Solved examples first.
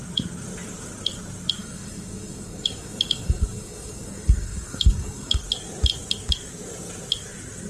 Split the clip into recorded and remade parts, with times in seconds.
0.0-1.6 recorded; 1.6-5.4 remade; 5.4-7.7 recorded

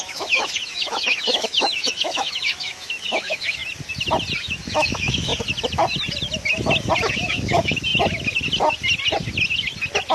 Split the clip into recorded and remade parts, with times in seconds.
0.0-3.6 remade; 3.6-4.4 recorded; 4.4-5.3 remade; 5.3-7.1 recorded; 7.1-7.9 remade; 7.9-10.1 recorded

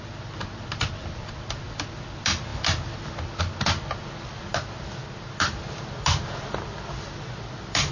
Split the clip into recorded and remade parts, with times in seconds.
0.0-7.9 recorded

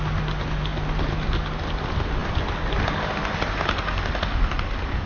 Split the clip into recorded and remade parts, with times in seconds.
0.0-5.1 recorded

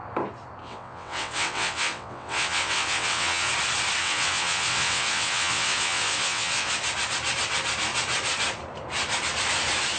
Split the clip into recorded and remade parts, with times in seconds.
0.0-0.6 recorded; 0.6-3.5 remade; 3.5-4.0 recorded; 4.0-6.7 remade; 6.7-10.0 recorded

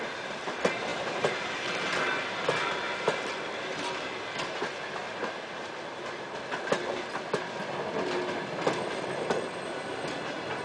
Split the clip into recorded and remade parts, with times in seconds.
0.0-0.9 recorded; 0.9-3.6 remade; 3.6-5.0 recorded; 5.0-9.5 remade; 9.5-10.6 recorded

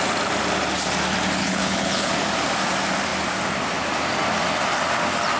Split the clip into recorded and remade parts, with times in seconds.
0.0-1.4 recorded; 1.4-2.1 remade; 2.1-5.4 recorded